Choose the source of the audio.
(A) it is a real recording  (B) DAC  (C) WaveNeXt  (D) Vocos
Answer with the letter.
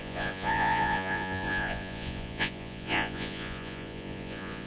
D